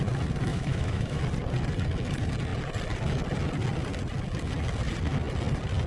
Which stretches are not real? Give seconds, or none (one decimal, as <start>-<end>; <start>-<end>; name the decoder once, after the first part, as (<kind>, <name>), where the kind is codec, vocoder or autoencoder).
0.5-1.2 (autoencoder, DAC-VAE)